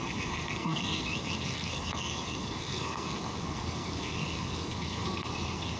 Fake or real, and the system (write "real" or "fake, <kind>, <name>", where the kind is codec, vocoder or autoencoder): fake, codec, SNAC